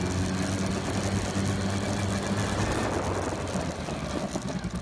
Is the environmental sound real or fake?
real